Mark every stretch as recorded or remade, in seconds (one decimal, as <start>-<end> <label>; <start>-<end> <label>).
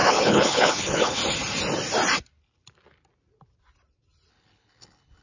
0.0-1.2 remade; 1.2-4.3 recorded; 4.3-5.2 remade